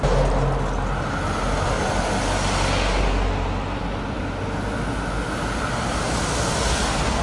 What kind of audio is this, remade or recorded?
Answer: recorded